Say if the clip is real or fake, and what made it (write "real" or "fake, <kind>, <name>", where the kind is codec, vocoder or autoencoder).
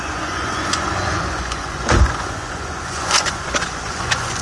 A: fake, vocoder, Vocos